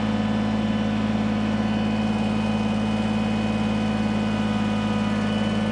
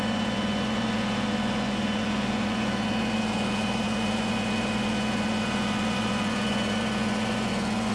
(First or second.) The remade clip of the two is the second